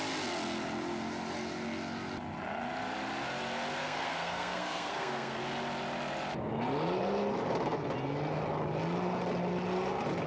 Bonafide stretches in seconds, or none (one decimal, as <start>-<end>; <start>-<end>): 0.0-3.8; 5.4-10.3